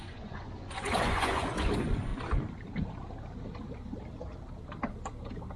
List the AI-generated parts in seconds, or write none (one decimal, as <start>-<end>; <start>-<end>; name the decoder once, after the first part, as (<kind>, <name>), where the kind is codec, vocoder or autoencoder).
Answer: 0.0-2.1 (vocoder, Vocos)